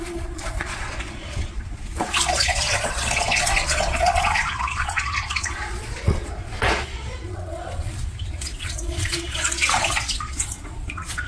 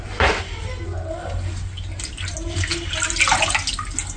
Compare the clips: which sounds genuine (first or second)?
second